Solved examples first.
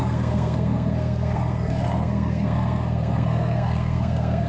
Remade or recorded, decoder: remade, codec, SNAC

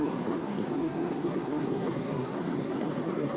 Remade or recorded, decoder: remade, codec, SNAC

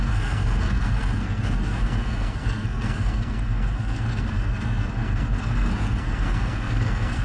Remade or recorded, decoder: remade, codec, SNAC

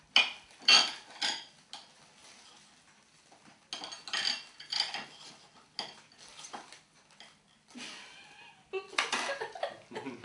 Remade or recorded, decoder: recorded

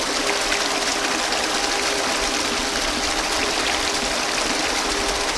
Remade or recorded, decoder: recorded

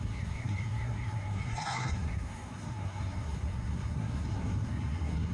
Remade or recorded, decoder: remade, codec, SNAC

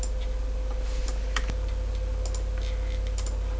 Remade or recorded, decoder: recorded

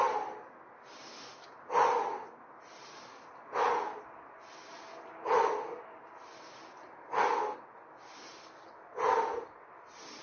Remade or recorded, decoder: recorded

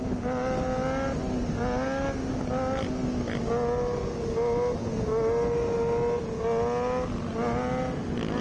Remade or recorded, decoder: recorded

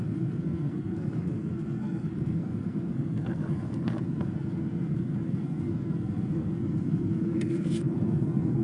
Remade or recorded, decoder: remade, codec, SNAC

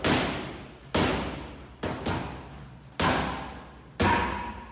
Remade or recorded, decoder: recorded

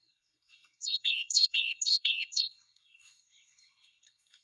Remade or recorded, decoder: remade, codec, SNAC